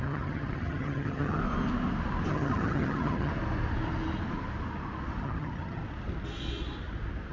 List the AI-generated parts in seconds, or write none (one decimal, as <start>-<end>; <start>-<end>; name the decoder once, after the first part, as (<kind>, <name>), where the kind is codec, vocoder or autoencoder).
0.0-1.4 (vocoder, HiFi-GAN); 2.3-3.3; 5.2-5.8